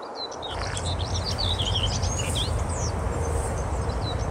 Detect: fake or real real